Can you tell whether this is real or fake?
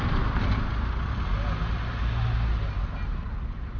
real